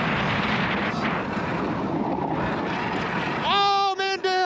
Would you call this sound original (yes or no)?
yes